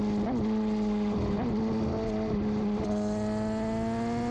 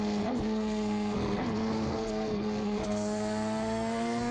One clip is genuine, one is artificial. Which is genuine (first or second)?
first